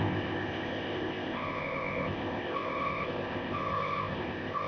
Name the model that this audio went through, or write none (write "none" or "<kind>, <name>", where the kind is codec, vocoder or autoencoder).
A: codec, ZipCodec